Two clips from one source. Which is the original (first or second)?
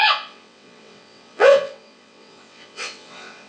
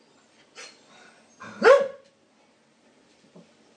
second